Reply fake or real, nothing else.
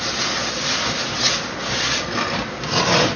real